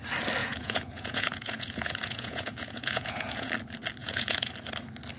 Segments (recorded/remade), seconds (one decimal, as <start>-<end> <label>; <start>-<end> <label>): 0.0-0.4 recorded; 0.4-3.5 remade; 3.5-4.0 recorded; 4.0-4.5 remade; 4.5-5.2 recorded